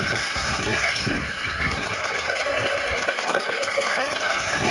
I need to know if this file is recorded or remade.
remade